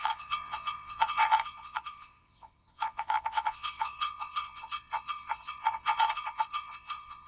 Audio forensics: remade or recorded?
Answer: remade